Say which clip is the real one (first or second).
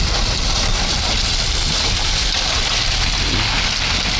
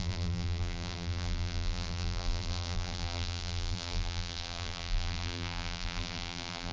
first